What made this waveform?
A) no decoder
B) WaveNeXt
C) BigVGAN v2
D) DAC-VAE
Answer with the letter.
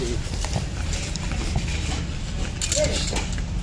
A